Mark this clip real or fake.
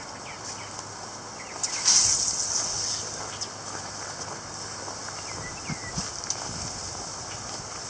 real